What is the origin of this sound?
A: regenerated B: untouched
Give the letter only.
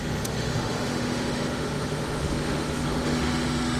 A